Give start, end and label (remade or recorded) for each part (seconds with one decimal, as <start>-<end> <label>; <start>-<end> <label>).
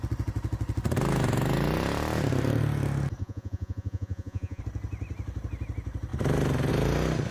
0.0-3.2 recorded; 3.2-4.6 remade; 4.6-7.3 recorded